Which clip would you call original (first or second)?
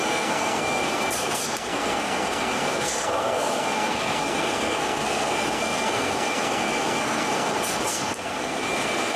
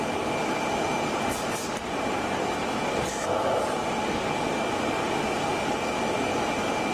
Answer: second